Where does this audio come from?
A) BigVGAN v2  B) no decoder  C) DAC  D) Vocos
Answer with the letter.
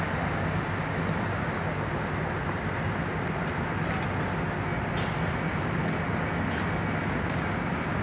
B